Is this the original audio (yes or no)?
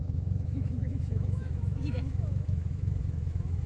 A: no